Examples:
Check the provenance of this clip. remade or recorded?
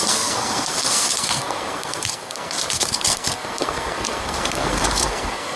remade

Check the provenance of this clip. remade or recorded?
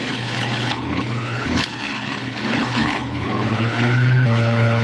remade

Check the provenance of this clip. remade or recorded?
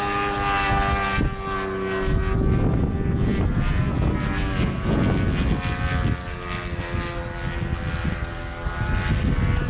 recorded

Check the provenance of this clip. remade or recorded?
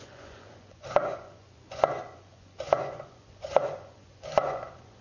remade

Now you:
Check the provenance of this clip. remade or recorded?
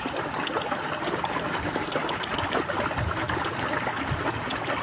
recorded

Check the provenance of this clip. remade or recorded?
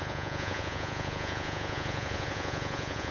remade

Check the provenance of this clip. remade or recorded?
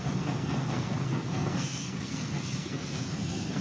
remade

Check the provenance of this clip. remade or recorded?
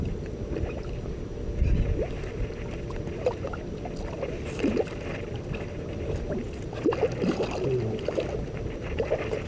recorded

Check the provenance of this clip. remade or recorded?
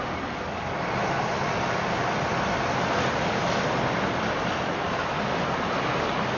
recorded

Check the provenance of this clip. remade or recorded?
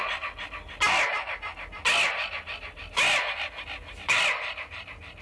recorded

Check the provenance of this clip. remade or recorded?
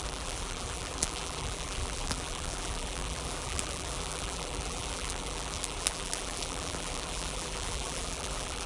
remade